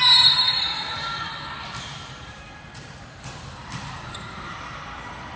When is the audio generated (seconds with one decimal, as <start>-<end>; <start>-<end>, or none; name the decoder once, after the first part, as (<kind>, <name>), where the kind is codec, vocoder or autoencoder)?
1.9-5.4 (vocoder, BigVGAN v2)